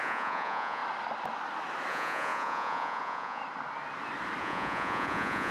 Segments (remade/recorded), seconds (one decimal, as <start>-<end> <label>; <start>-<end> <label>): 0.0-0.8 remade; 0.8-1.9 recorded; 1.9-3.4 remade; 3.4-4.4 recorded; 4.4-5.5 remade